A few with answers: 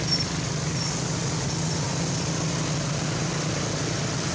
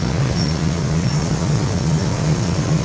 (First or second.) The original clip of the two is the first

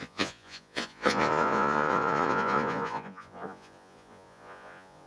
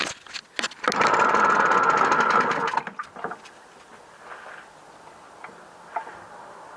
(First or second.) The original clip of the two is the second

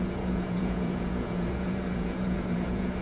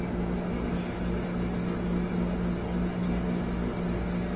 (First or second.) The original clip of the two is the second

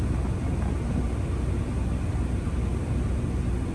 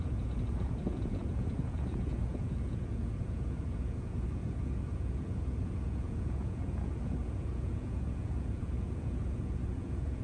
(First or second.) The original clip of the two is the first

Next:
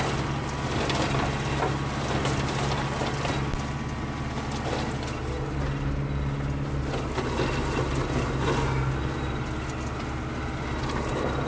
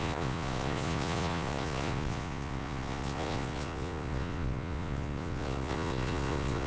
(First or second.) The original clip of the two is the first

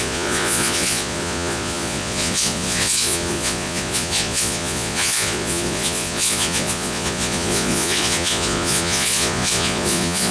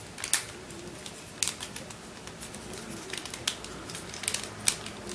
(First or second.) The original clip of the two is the second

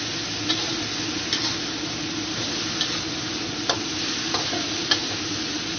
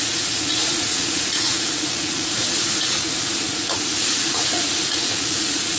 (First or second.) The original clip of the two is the first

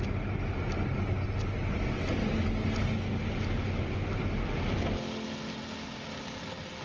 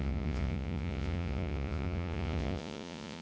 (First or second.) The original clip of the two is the first